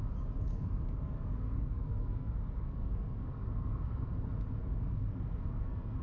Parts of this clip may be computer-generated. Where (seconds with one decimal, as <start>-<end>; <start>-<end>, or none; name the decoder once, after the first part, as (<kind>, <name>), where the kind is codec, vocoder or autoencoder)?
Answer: 0.5-4.1 (codec, SNAC); 4.6-6.0